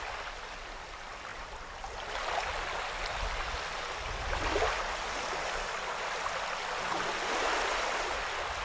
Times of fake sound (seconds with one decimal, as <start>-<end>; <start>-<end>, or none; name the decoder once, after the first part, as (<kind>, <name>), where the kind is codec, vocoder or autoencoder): none